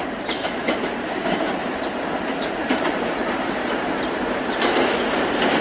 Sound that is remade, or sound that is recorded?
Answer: remade